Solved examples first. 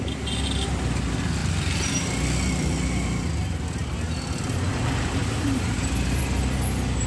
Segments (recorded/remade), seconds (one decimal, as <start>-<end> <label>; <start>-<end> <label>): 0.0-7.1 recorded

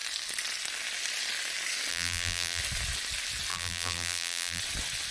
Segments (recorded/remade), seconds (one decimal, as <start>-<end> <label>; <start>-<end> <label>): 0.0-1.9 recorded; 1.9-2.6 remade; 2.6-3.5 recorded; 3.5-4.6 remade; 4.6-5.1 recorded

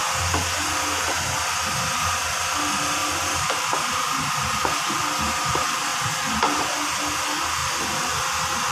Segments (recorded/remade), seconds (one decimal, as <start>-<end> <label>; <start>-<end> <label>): 0.0-3.0 recorded; 3.0-5.0 remade; 5.0-8.7 recorded

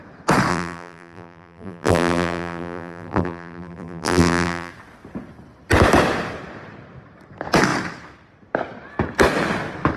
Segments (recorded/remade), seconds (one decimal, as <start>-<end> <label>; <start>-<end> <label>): 0.0-0.5 recorded; 0.5-4.7 remade; 4.7-10.0 recorded

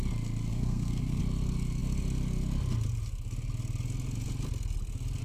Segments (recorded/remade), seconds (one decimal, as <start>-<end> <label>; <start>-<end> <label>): 0.0-0.5 recorded; 0.5-1.2 remade; 1.2-5.2 recorded